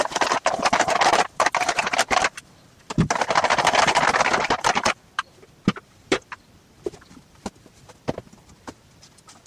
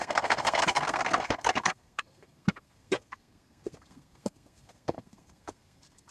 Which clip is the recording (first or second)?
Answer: first